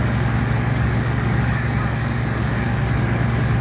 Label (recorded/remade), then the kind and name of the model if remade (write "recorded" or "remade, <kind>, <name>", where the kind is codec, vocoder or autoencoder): remade, codec, DAC